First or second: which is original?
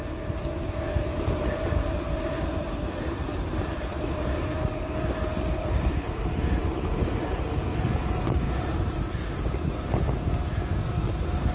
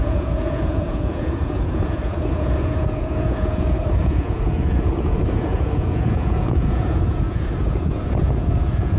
first